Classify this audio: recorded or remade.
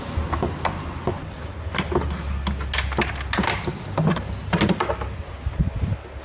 recorded